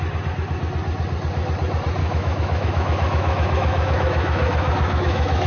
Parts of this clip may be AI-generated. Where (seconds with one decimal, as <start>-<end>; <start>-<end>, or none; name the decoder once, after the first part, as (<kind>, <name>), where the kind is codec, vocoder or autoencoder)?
2.0-5.5 (autoencoder, DAC-VAE)